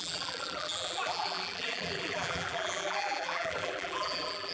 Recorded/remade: remade